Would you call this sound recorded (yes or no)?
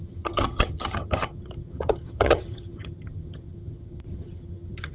no